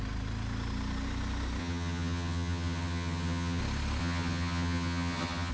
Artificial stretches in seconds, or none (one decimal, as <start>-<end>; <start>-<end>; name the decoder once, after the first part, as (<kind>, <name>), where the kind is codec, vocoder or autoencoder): 1.6-3.6 (vocoder, HiFi-GAN); 4.0-5.5